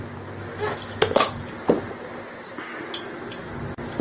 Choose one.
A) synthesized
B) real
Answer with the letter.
B